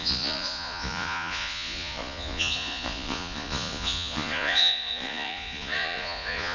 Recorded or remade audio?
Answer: remade